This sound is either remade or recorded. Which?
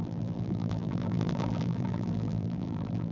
remade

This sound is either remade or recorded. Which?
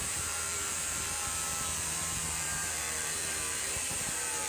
remade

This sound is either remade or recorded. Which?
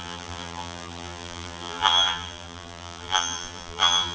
remade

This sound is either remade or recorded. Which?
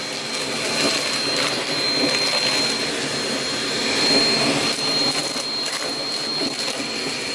recorded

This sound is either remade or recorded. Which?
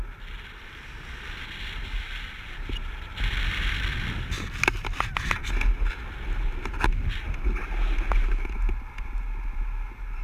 recorded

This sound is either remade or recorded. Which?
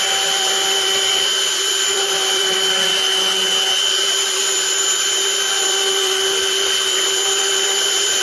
remade